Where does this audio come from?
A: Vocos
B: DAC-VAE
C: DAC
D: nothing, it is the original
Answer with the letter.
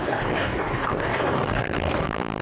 C